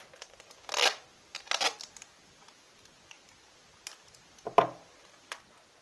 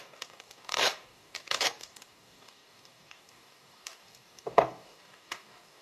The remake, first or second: second